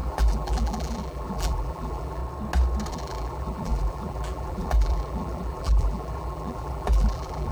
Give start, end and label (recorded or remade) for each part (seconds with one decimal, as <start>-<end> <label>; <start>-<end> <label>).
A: 0.0-2.2 remade; 2.2-2.9 recorded; 2.9-7.5 remade